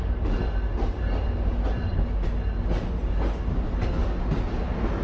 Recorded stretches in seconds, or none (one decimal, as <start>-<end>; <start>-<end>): 0.0-5.0